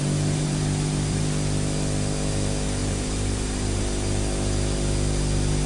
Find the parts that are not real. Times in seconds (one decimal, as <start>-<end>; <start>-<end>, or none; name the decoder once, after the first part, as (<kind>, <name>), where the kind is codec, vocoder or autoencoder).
0.0-1.2 (vocoder, BigVGAN v2); 2.8-3.8